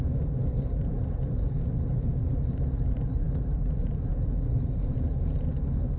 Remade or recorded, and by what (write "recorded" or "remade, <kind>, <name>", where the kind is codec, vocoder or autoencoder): remade, vocoder, BigVGAN v2